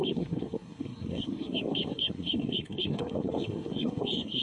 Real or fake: fake